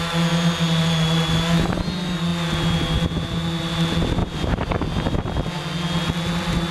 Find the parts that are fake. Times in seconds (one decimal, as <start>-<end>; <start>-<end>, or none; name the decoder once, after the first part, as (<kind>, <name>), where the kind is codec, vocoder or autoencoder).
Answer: 4.2-4.8 (vocoder, BigVGAN v2)